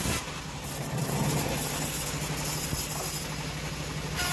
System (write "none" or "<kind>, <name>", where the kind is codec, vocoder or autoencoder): none